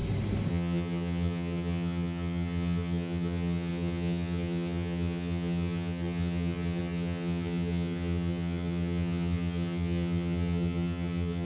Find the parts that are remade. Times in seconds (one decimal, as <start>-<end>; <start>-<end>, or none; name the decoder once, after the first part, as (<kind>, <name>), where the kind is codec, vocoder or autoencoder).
0.5-11.5 (vocoder, HiFi-GAN)